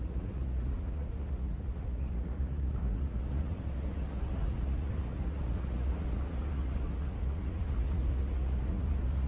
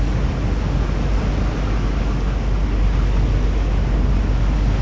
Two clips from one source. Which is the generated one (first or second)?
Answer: first